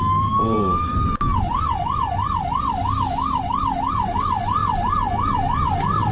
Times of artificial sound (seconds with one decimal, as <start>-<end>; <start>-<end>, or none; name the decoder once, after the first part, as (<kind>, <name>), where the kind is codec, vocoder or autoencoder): 0.0-1.3 (vocoder, BigVGAN v2); 3.9-6.1